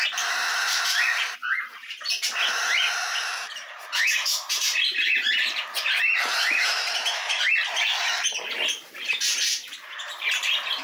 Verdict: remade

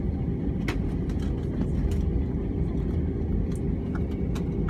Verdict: recorded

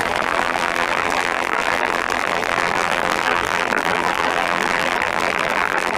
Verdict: remade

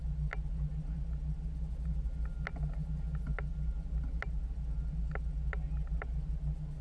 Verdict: recorded